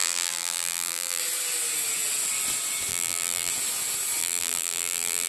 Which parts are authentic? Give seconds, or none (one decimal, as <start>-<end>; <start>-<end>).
1.2-2.9; 3.5-4.2